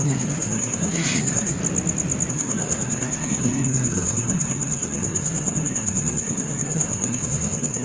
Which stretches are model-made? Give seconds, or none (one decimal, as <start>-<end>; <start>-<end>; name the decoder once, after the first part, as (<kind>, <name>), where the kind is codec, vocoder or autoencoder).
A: 0.0-1.6 (codec, SNAC); 2.3-7.8